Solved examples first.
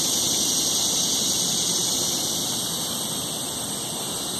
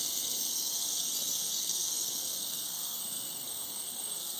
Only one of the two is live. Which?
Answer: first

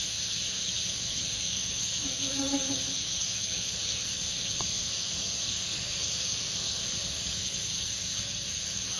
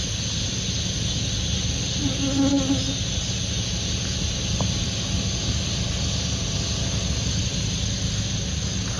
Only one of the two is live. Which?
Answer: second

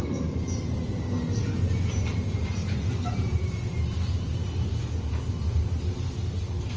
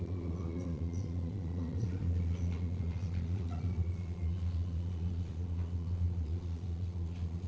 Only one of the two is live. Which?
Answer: first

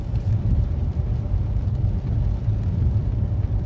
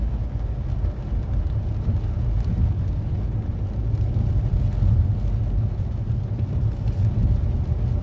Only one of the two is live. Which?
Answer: second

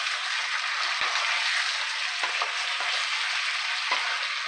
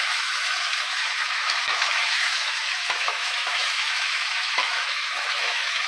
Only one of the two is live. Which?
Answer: first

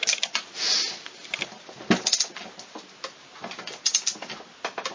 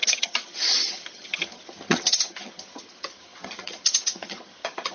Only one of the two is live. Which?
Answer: first